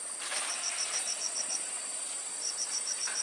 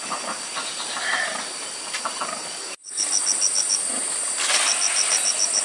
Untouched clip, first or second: second